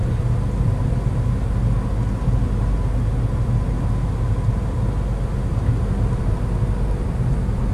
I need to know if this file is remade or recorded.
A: recorded